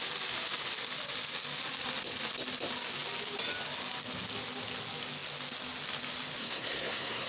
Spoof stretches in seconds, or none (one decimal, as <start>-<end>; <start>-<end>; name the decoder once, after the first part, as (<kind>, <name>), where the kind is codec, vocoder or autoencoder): 6.4-7.3 (codec, SNAC)